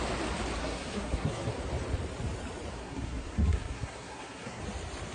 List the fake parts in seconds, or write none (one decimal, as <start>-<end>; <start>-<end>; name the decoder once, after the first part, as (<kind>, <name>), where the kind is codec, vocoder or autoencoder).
0.6-1.5 (codec, SNAC); 2.7-4.6